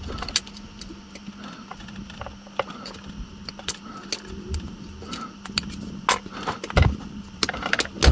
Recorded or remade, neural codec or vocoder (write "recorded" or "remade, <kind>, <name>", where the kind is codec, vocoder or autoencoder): recorded